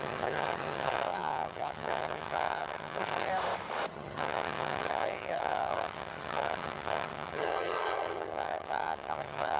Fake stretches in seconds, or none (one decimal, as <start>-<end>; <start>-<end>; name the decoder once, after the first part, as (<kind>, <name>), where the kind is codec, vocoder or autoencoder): 0.0-3.3 (vocoder, HiFi-GAN); 3.9-9.6